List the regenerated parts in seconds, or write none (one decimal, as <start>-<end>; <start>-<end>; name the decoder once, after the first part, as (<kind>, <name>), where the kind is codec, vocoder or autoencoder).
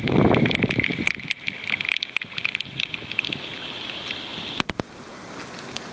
none